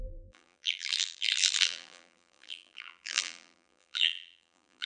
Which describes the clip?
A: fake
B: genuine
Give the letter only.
A